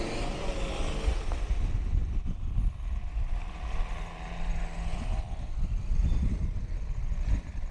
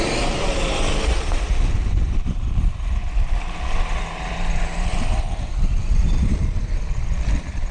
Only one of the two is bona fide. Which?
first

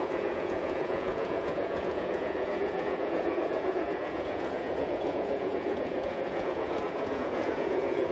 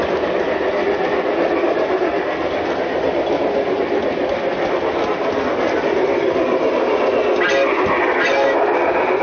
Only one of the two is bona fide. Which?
second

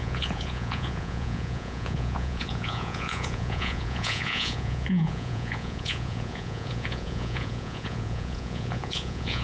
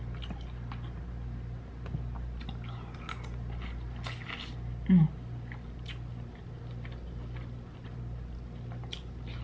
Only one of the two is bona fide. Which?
second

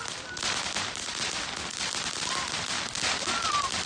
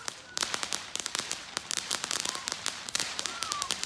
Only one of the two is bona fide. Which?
first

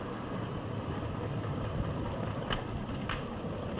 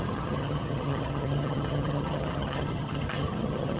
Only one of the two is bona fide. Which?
first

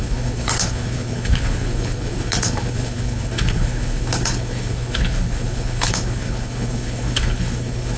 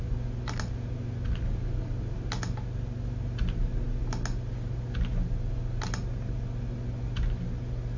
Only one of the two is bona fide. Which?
second